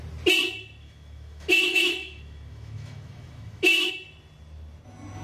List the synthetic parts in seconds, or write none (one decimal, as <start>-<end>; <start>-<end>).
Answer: 0.8-3.9